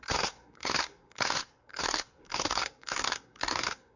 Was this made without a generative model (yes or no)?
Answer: no